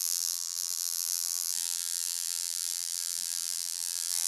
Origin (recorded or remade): remade